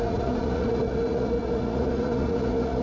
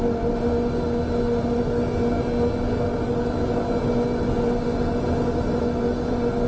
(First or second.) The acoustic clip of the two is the second